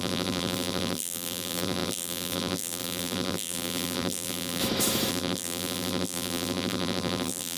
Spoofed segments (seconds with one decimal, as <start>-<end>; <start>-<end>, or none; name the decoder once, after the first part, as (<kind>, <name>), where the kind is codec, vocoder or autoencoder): 0.0-4.6 (vocoder, BigVGAN v2); 5.1-7.6